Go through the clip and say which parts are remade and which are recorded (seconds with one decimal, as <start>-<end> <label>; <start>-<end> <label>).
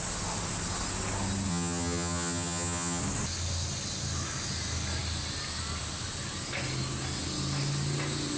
0.0-1.5 recorded; 1.5-3.0 remade; 3.0-8.4 recorded